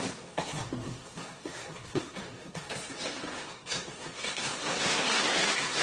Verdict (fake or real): fake